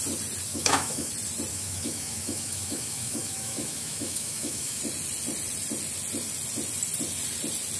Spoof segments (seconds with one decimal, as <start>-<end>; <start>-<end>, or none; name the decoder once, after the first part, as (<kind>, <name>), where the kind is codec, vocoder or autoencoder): 0.5-1.1 (autoencoder, DAC-VAE); 1.5-4.8